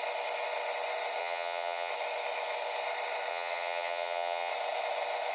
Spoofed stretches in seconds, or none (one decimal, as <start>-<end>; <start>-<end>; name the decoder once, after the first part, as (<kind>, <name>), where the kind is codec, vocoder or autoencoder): 1.2-1.9 (vocoder, HiFi-GAN); 3.3-4.5